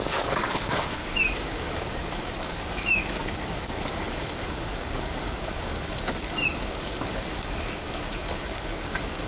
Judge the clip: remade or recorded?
remade